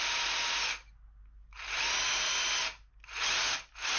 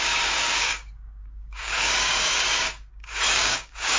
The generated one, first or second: second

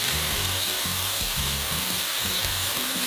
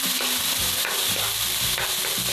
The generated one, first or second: first